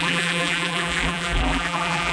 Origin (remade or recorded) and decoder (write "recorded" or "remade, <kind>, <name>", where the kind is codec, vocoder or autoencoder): remade, vocoder, BigVGAN v2